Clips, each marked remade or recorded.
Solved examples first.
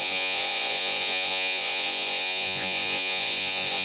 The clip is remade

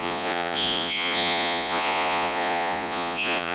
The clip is remade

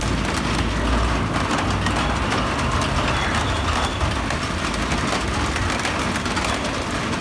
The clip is recorded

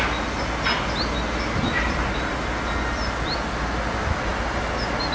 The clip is recorded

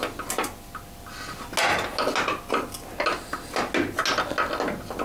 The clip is recorded